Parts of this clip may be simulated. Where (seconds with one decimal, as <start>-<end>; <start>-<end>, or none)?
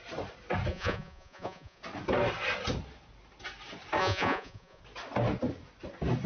0.7-1.8; 4.0-4.8